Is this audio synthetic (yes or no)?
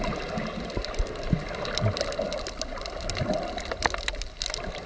no